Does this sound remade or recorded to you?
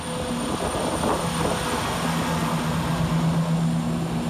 recorded